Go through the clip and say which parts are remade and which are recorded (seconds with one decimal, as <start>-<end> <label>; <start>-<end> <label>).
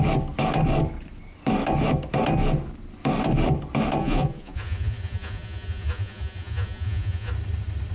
0.0-4.0 recorded; 4.0-7.3 remade; 7.3-7.9 recorded